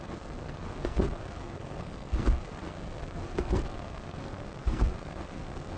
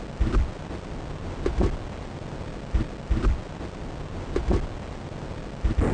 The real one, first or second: second